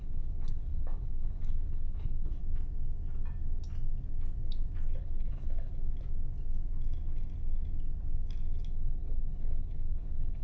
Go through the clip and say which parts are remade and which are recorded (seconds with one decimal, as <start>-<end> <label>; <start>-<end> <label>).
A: 0.0-2.4 remade; 2.4-5.0 recorded; 5.0-5.7 remade; 5.7-8.7 recorded; 8.7-10.4 remade